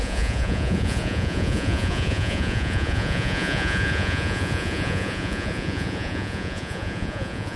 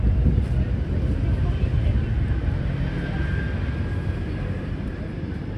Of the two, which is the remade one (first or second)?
first